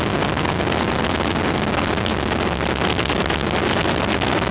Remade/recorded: recorded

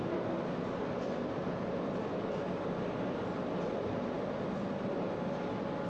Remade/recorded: recorded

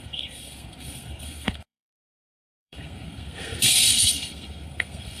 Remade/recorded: remade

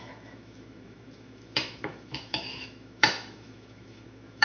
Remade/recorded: remade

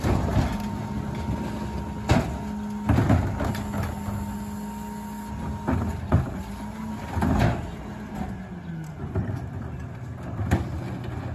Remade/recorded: recorded